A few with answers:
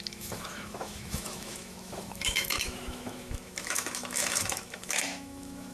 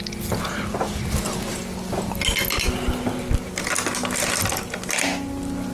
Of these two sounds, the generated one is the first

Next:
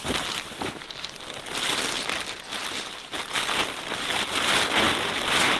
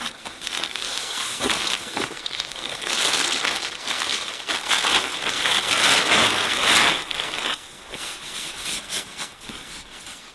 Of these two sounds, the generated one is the second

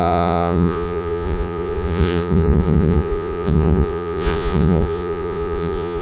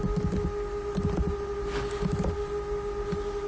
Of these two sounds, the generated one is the first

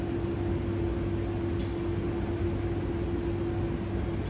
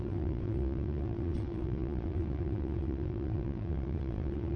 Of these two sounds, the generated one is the second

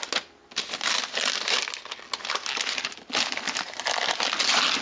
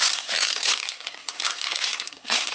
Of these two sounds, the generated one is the second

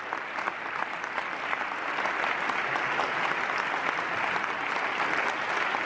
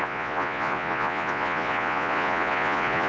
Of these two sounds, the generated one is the second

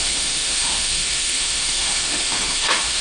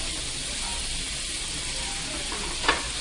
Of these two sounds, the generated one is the first